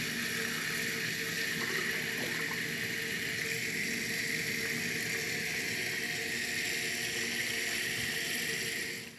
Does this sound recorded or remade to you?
recorded